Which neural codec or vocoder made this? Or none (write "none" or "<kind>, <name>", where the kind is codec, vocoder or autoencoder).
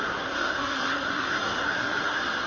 codec, SNAC